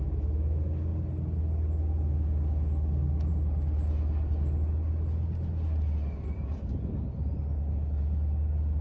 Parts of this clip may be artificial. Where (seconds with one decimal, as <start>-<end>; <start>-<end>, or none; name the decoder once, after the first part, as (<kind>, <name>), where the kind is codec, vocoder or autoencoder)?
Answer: none